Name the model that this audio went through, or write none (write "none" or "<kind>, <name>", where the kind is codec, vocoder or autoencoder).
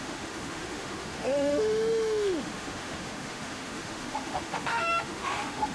autoencoder, DAC-VAE